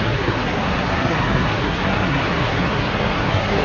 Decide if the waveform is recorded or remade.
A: remade